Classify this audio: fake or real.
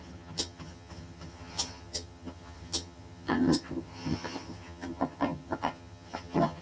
fake